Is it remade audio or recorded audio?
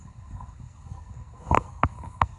remade